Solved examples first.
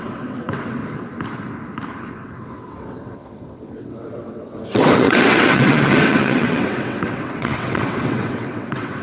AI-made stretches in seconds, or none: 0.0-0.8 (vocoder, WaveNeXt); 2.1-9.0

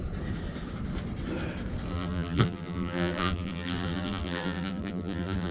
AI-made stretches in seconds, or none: 1.9-5.5 (vocoder, BigVGAN v2)